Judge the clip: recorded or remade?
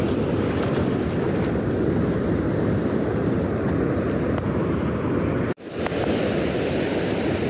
recorded